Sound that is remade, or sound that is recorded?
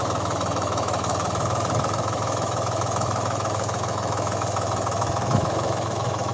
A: remade